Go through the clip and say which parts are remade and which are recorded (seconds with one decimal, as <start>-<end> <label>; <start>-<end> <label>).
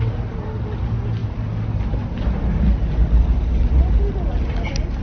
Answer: 0.0-5.0 recorded